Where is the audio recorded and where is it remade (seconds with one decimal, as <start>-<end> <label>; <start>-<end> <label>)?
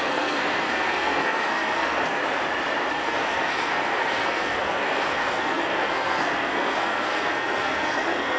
0.0-2.2 remade; 2.2-2.9 recorded; 2.9-8.4 remade